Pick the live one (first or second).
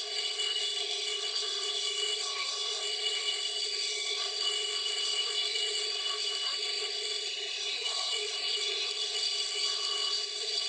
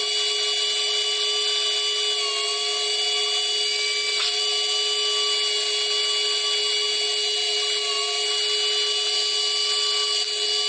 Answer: second